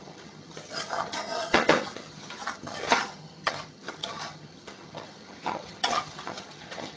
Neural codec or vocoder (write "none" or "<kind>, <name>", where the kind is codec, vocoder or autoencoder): vocoder, HiFi-GAN